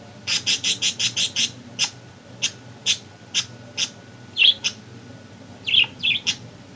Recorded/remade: remade